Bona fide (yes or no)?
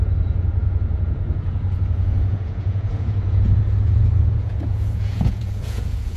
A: no